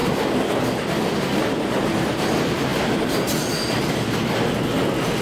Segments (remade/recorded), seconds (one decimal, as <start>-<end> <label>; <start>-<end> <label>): 0.0-5.2 recorded